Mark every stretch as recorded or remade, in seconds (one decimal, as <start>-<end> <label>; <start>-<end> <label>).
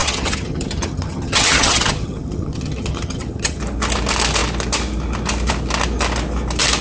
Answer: 0.0-3.6 remade; 3.6-6.8 recorded